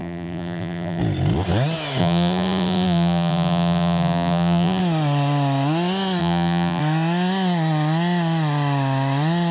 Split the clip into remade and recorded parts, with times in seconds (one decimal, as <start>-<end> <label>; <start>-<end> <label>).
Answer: 0.0-1.0 remade; 1.0-2.0 recorded; 2.0-4.8 remade; 4.8-6.2 recorded; 6.2-6.8 remade; 6.8-9.5 recorded